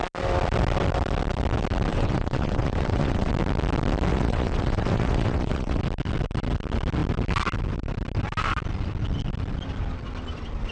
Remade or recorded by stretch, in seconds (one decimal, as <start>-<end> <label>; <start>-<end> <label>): 0.0-1.9 recorded; 1.9-3.3 remade; 3.3-4.1 recorded; 4.1-5.8 remade; 5.8-10.7 recorded